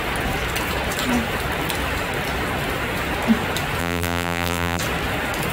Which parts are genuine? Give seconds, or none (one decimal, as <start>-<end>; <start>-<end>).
0.0-3.8; 4.8-5.5